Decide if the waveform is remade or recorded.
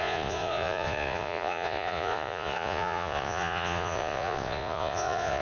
remade